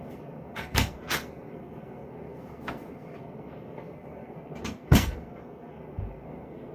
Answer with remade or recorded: remade